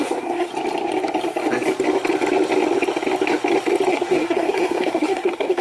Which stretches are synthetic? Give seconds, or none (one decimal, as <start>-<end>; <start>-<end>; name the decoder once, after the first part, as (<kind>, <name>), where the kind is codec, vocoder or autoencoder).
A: 0.0-0.5 (codec, SNAC); 3.9-5.6